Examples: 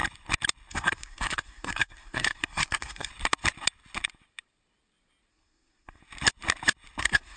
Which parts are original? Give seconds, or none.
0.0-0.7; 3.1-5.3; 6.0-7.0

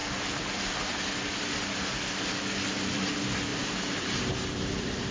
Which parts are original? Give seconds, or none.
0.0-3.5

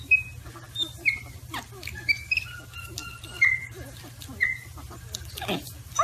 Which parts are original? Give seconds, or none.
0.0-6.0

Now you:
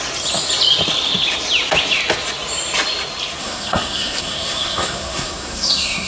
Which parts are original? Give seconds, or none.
0.0-3.4

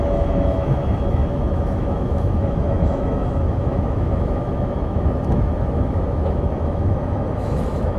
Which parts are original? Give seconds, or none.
none